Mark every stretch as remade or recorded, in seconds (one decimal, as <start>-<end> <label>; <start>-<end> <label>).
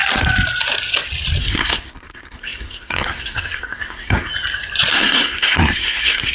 0.0-1.4 recorded; 1.4-4.3 remade; 4.3-4.9 recorded; 4.9-6.3 remade